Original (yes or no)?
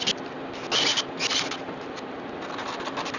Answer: yes